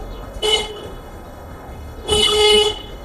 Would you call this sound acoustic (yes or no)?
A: no